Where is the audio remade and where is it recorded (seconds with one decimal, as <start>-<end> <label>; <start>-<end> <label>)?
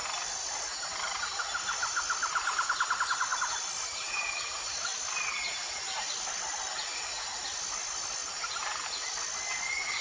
0.0-0.6 remade; 0.6-8.2 recorded; 8.2-8.9 remade; 8.9-10.0 recorded